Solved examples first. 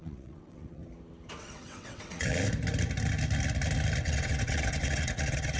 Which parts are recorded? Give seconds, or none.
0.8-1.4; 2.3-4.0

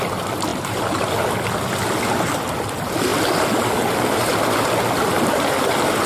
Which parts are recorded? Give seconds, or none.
0.0-0.5; 1.1-6.1

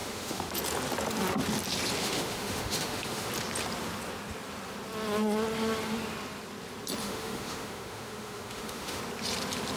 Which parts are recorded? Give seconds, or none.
0.5-2.0; 3.3-7.0; 9.0-9.8

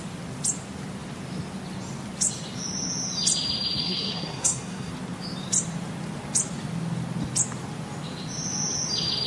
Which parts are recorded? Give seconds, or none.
0.0-3.8; 4.9-9.3

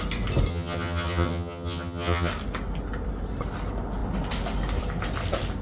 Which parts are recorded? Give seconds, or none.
0.0-0.5; 2.3-5.6

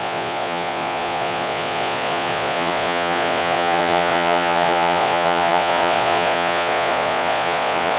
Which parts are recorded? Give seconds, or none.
none